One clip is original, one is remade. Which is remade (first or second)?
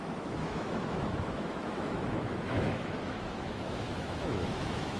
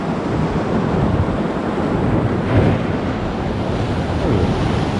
first